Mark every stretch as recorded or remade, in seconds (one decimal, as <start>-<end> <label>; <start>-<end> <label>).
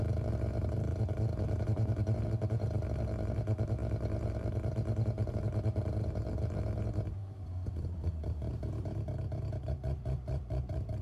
0.0-11.0 remade